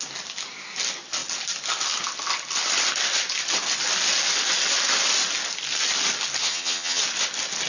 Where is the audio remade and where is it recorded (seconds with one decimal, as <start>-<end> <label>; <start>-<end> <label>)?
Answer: 0.0-6.4 recorded; 6.4-7.0 remade; 7.0-7.7 recorded